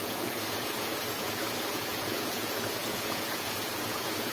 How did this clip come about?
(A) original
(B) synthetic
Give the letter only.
B